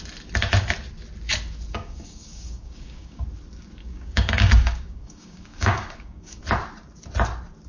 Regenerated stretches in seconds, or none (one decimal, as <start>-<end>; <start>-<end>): 1.7-3.2; 3.8-6.4